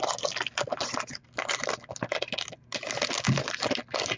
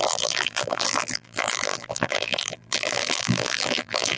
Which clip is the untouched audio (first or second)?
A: first